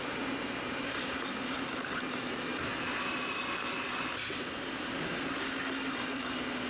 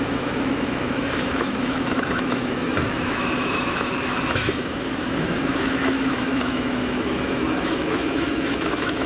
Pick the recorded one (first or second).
first